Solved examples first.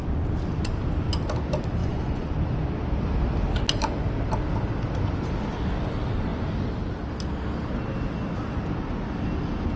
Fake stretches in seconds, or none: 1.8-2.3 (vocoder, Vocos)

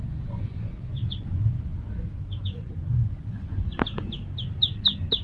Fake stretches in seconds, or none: 0.0-3.7 (vocoder, Vocos)

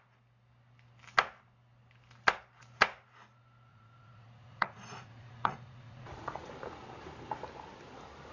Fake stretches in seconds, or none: 3.7-6.5 (vocoder, Vocos)

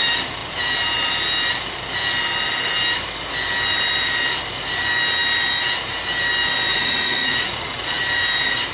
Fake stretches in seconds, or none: 6.7-8.0 (vocoder, Vocos)

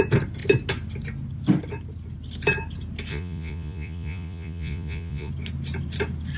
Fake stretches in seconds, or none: 3.1-5.3 (vocoder, Vocos)

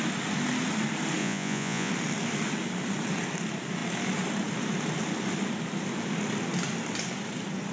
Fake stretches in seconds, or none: 1.2-1.9 (vocoder, Vocos)